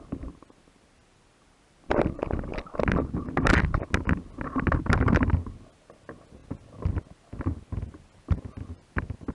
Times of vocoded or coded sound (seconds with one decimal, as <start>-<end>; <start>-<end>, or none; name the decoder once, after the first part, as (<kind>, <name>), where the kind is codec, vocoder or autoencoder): none